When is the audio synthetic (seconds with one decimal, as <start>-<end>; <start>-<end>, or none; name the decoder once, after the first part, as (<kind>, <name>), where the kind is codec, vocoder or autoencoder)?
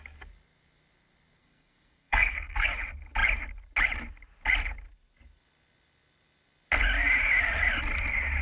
1.4-2.7 (codec, SNAC)